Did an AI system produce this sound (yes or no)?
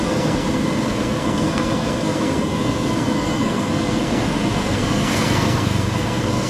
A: yes